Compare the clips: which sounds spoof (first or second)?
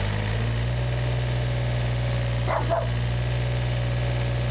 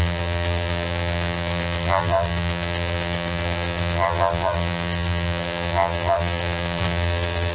second